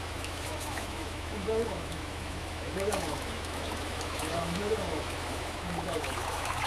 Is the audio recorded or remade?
remade